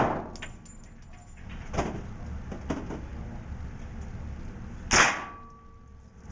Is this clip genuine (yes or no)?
yes